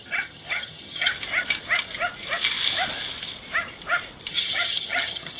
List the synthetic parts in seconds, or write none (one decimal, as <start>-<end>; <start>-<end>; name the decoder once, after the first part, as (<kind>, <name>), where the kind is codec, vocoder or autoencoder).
0.0-1.1 (vocoder, HiFi-GAN); 4.3-5.4